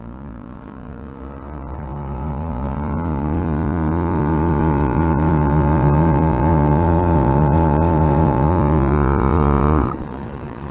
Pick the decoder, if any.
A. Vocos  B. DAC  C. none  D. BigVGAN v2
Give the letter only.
A